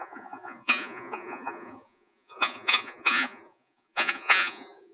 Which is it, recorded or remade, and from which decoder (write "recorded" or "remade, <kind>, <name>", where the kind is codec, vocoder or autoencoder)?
remade, vocoder, Vocos